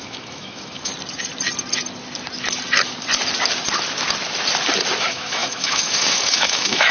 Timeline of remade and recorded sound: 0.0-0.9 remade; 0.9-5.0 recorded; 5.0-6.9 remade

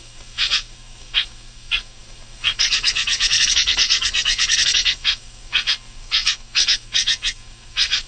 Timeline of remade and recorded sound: 0.0-8.1 remade

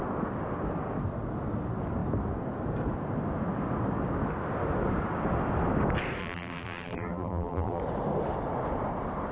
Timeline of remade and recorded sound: 0.0-6.2 recorded; 6.2-7.8 remade; 7.8-9.3 recorded

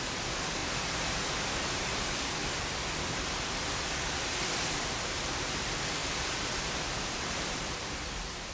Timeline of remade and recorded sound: 0.0-0.6 remade; 0.6-1.4 recorded; 1.4-2.4 remade; 2.4-5.5 recorded; 5.5-8.5 remade

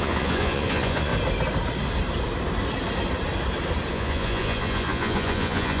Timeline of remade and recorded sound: 0.0-1.1 remade; 1.1-3.9 recorded; 3.9-5.8 remade

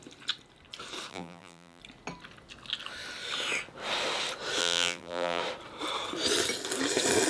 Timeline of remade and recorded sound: 0.0-1.1 recorded; 1.1-1.8 remade; 1.8-4.6 recorded; 4.6-5.4 remade; 5.4-7.3 recorded

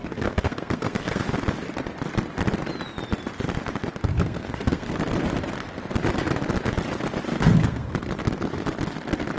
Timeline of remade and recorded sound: 0.0-1.2 remade; 1.2-4.1 recorded; 4.1-5.0 remade; 5.0-7.3 recorded; 7.3-8.0 remade; 8.0-9.4 recorded

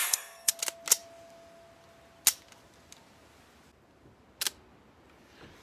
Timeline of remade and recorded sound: 0.0-0.5 remade; 0.5-5.6 recorded